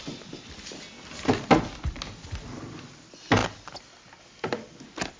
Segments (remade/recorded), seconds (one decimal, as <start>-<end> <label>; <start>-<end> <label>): 0.0-5.2 recorded

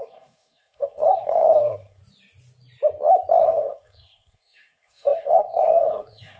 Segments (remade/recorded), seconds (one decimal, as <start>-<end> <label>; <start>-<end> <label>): 0.0-2.0 remade; 2.0-3.4 recorded; 3.4-6.4 remade